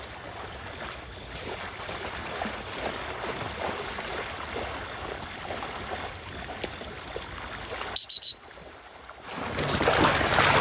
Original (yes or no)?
yes